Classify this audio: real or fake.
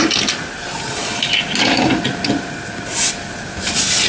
real